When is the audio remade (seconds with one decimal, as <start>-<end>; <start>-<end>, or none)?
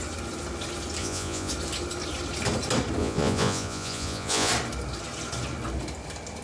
1.0-1.5; 3.0-4.5